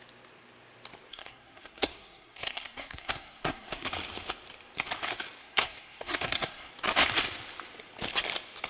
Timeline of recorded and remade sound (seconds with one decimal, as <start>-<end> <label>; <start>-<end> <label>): 0.0-1.1 recorded; 1.1-3.9 remade; 3.9-5.4 recorded; 5.4-6.7 remade; 6.7-8.7 recorded